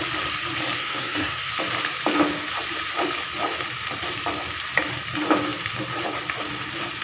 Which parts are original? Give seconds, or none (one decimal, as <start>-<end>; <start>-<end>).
0.0-0.8; 1.5-7.0

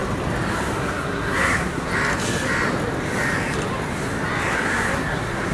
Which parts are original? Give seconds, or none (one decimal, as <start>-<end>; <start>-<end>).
0.0-0.8; 1.9-4.5

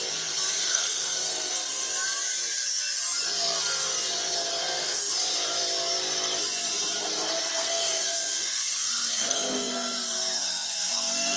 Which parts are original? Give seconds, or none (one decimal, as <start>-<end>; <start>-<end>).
0.0-0.6; 1.9-4.6; 5.1-7.5

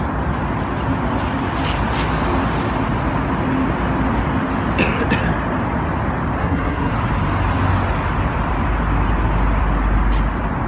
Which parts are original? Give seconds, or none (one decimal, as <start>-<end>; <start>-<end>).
0.0-6.4; 6.9-10.7

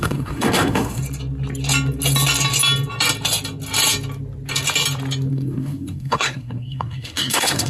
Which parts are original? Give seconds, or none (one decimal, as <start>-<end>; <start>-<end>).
1.0-5.3

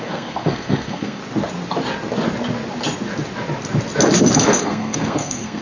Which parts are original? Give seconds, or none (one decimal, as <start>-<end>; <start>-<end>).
1.2-4.6

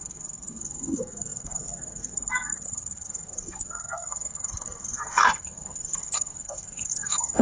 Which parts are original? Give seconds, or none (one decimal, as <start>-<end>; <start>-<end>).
none